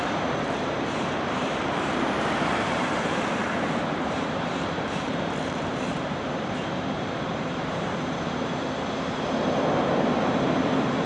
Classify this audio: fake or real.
fake